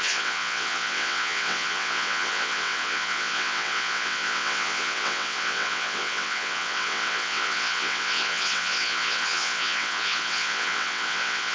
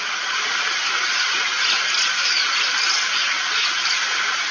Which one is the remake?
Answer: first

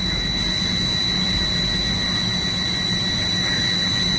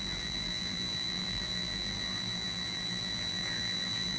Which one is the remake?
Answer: second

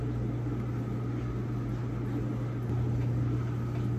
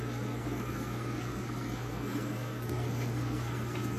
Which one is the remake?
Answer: second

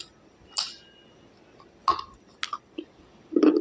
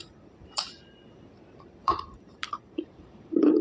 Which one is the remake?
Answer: second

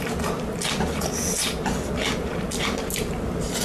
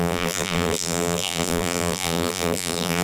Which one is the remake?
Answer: second